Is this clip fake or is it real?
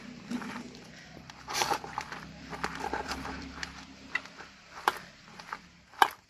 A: fake